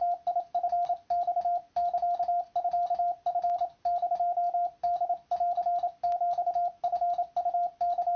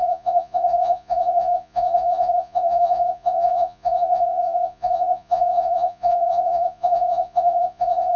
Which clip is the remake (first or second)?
second